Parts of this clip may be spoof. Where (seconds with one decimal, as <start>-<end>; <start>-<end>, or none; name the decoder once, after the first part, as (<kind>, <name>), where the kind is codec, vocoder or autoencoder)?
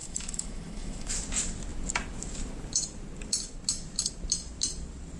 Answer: 0.0-1.1 (autoencoder, DAC-VAE)